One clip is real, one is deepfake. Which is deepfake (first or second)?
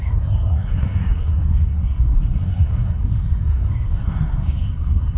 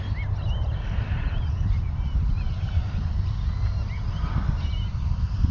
first